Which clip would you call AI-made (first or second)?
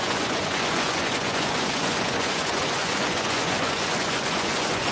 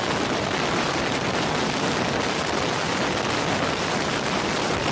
first